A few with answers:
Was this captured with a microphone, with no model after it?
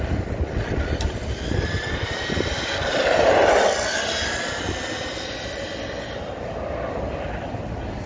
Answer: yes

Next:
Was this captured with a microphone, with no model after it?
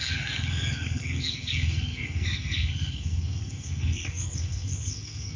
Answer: no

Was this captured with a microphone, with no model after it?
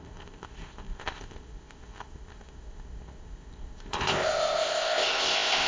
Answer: no